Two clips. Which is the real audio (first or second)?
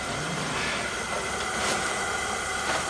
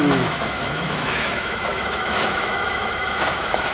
first